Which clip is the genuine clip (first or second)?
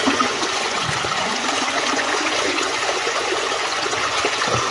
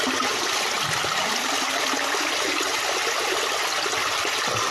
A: second